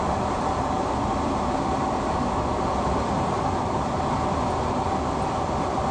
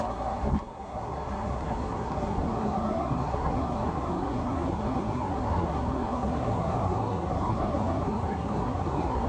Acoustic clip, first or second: first